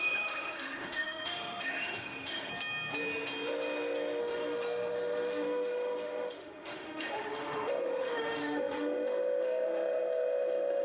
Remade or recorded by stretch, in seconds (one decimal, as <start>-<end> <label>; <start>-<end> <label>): 0.0-2.5 remade; 2.5-4.2 recorded; 4.2-10.8 remade